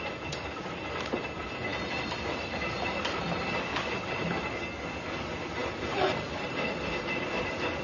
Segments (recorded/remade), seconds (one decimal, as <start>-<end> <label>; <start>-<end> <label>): 0.0-7.8 recorded